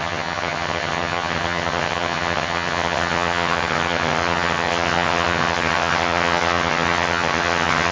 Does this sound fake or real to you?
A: fake